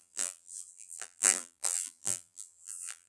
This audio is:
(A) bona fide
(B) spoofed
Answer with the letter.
B